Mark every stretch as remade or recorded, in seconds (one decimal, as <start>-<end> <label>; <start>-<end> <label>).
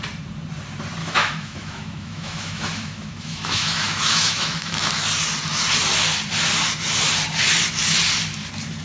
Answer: 0.0-1.0 recorded; 1.0-4.9 remade; 4.9-8.8 recorded